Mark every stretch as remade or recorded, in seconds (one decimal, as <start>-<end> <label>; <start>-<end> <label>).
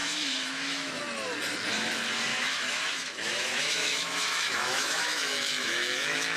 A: 0.0-1.0 remade; 1.0-2.3 recorded; 2.3-6.4 remade